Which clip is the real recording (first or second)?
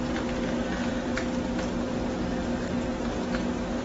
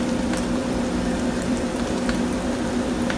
first